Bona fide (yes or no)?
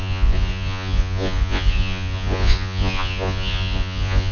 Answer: no